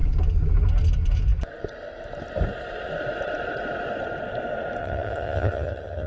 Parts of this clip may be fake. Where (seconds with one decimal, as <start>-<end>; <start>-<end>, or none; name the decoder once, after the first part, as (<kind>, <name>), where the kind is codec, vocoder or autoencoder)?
4.8-6.1 (vocoder, HiFi-GAN)